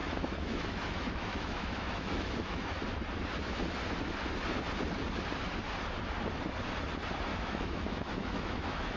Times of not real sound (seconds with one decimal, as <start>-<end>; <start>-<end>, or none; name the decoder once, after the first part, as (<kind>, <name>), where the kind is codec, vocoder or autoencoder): 0.0-2.8 (autoencoder, DAC-VAE); 7.3-9.0